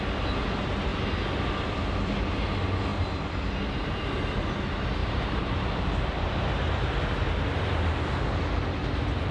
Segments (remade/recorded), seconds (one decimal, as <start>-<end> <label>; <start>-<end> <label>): 0.0-5.0 recorded; 5.0-6.9 remade; 6.9-9.3 recorded

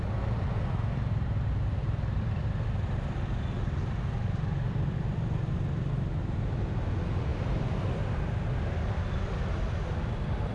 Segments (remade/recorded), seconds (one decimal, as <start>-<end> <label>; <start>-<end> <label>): 0.0-1.8 recorded; 1.8-5.9 remade; 5.9-7.3 recorded; 7.3-7.9 remade; 7.9-10.5 recorded

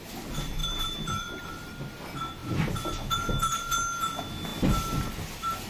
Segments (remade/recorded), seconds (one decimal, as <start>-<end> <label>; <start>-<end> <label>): 0.0-0.6 recorded; 0.6-1.5 remade; 1.5-5.7 recorded

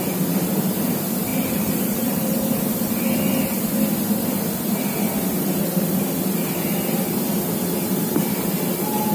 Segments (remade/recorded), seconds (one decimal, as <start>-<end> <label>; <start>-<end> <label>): 0.0-1.3 recorded; 1.3-2.4 remade; 2.4-9.1 recorded

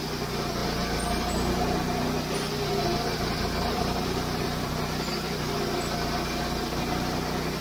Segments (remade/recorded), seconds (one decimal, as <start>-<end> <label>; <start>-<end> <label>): 0.0-2.9 recorded; 2.9-4.7 remade; 4.7-7.6 recorded

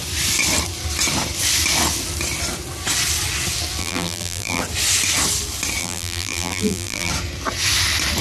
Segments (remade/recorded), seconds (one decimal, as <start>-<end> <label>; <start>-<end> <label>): 0.0-3.8 recorded; 3.8-4.6 remade; 4.6-5.8 recorded; 5.8-7.1 remade; 7.1-8.2 recorded

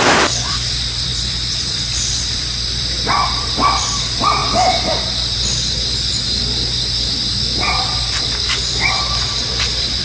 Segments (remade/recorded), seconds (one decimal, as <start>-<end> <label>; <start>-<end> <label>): 0.0-4.4 remade; 4.4-9.6 recorded; 9.6-10.0 remade

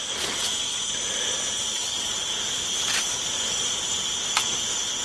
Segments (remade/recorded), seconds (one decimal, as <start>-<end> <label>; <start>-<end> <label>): 0.0-0.5 remade; 0.5-1.6 recorded; 1.6-5.0 remade